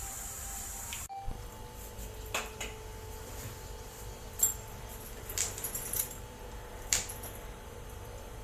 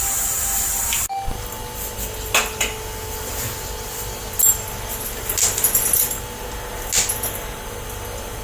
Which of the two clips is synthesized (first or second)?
first